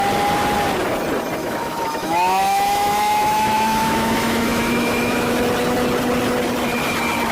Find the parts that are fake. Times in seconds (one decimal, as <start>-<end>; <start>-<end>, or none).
1.4-5.3